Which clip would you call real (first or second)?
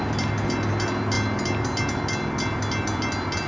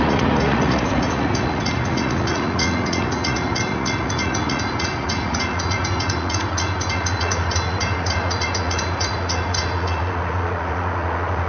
first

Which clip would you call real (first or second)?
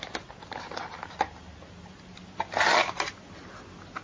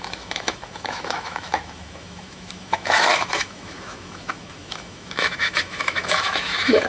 first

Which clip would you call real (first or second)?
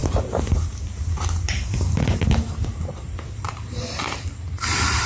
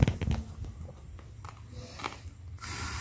second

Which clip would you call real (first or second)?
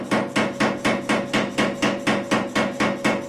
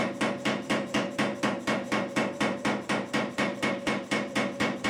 first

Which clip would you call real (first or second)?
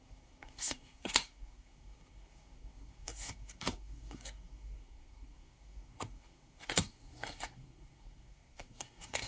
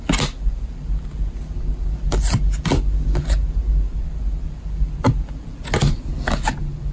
second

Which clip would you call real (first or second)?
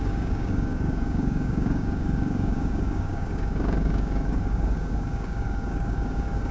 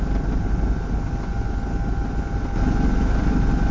second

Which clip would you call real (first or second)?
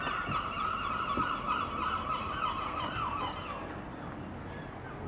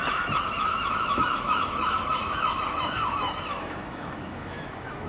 first